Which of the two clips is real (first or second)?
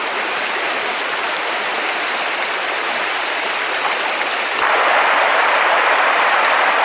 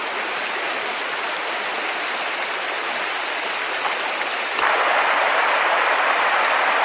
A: second